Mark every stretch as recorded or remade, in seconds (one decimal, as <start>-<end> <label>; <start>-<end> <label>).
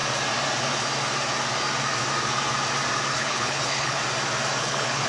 0.0-3.1 recorded; 3.1-4.0 remade; 4.0-4.6 recorded; 4.6-5.1 remade